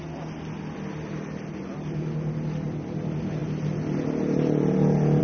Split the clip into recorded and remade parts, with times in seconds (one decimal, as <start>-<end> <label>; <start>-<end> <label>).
0.0-5.2 recorded